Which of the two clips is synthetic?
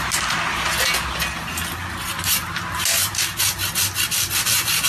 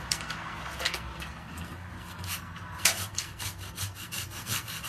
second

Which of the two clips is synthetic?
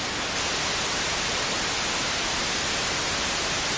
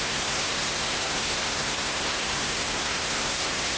second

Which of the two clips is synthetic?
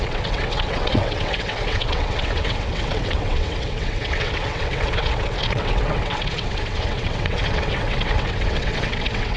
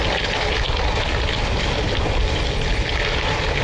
first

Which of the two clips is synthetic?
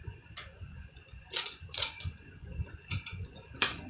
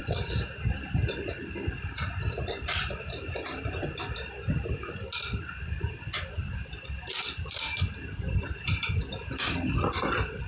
first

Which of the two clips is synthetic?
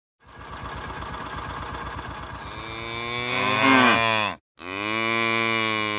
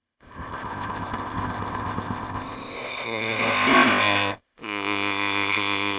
second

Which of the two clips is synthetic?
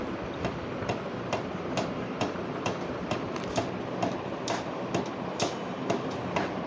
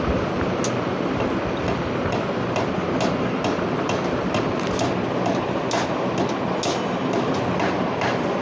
first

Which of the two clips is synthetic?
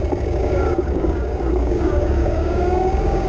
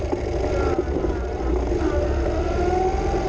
first